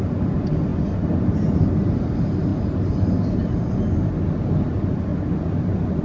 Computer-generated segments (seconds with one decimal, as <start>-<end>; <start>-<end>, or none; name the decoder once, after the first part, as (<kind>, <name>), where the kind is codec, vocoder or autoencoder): none